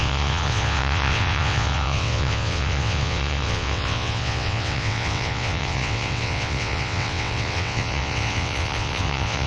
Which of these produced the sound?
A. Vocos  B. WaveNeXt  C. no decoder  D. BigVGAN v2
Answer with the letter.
B